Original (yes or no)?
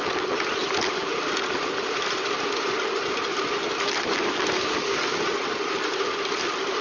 yes